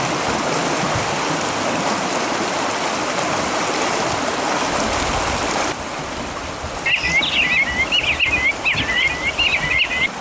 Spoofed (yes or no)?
no